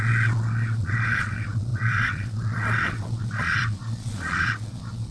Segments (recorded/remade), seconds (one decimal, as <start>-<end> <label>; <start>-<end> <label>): 0.0-5.1 remade